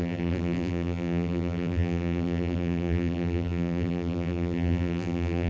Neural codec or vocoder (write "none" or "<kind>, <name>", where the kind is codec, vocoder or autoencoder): vocoder, BigVGAN v2